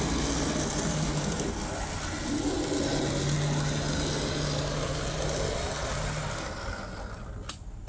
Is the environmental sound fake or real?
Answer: real